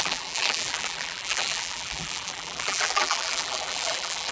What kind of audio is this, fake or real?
fake